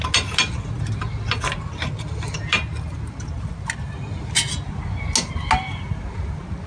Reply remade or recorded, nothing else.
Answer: recorded